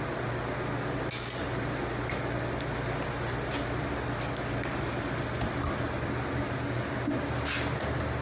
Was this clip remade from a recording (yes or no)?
no